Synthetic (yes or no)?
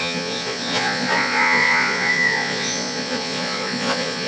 yes